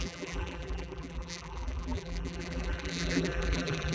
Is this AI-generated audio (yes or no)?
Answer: yes